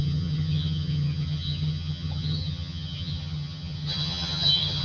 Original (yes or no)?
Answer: no